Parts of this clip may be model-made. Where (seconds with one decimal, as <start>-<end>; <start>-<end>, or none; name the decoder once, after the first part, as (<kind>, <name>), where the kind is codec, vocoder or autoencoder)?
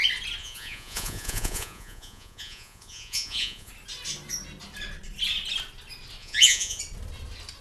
0.4-3.7 (vocoder, Vocos); 6.2-6.8